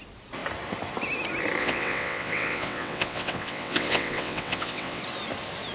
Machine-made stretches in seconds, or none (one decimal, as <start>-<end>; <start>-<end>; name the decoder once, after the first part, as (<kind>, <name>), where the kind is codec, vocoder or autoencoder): 1.6-5.0 (vocoder, WaveNeXt)